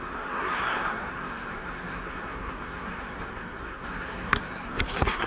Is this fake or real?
fake